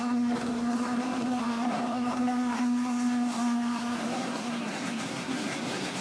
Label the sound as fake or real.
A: fake